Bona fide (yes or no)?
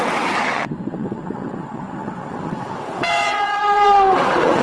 no